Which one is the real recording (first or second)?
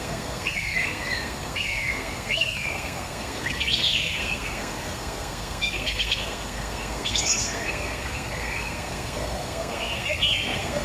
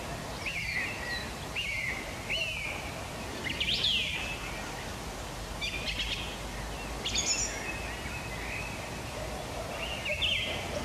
second